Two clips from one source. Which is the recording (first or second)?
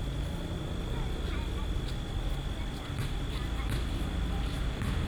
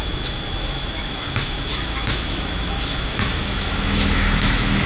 first